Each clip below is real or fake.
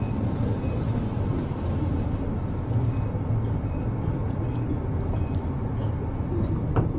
real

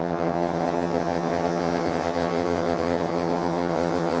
fake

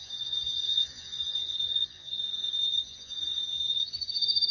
fake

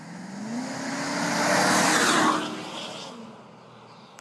real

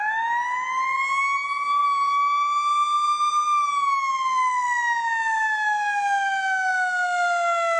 real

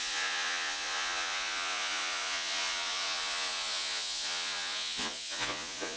fake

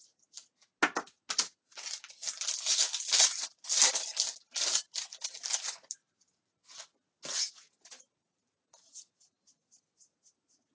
real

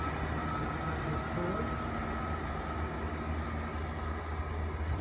real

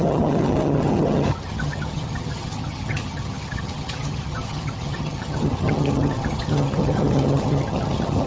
fake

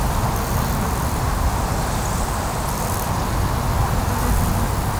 real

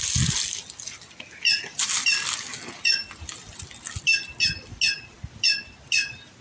real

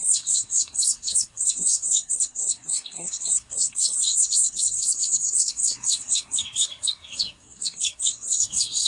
fake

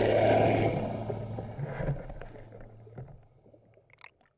real